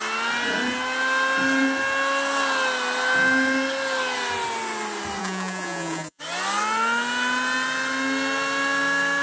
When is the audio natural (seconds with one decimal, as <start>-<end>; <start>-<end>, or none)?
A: 0.0-5.2; 6.2-9.2